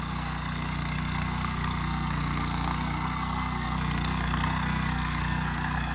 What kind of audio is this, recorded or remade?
remade